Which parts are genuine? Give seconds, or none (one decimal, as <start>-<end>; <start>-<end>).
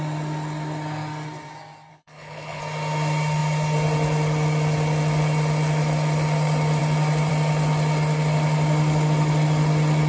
0.0-1.9; 2.6-10.1